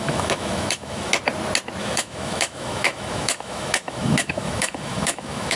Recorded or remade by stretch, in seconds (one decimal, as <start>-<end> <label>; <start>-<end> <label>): 0.0-1.1 remade; 1.1-1.8 recorded; 1.8-5.6 remade